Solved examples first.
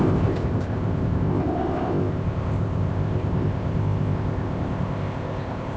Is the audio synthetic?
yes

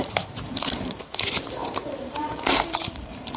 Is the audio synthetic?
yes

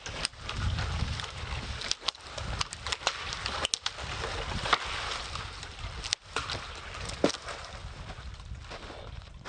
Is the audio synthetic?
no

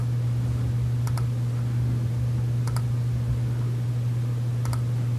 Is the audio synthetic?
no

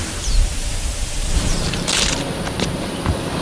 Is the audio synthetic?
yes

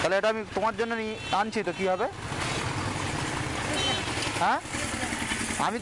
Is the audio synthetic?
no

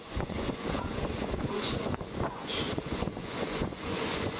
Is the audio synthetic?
yes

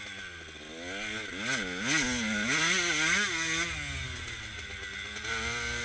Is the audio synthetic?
no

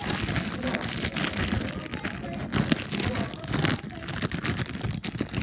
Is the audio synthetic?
no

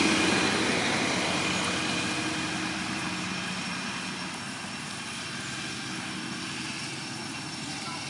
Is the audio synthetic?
no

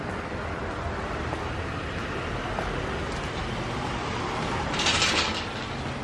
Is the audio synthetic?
no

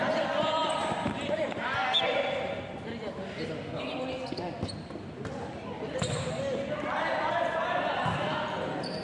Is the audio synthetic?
no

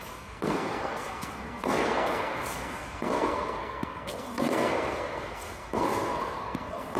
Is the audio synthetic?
yes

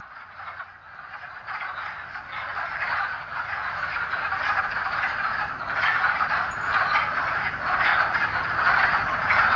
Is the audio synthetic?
no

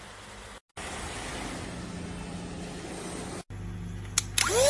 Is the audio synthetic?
no